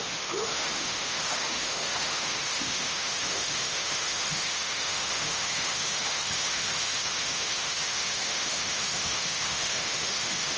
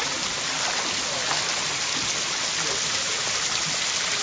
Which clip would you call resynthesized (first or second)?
first